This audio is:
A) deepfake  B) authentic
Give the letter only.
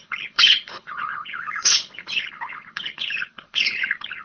A